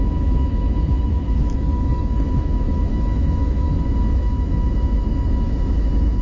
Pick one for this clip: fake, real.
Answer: fake